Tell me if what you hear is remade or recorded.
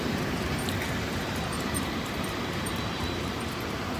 remade